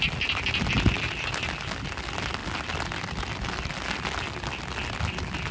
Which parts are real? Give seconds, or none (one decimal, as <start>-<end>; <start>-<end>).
0.0-5.5